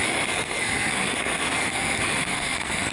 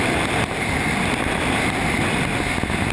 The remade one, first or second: first